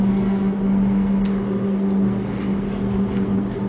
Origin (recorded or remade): remade